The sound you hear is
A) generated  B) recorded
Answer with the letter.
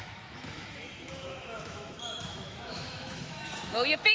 A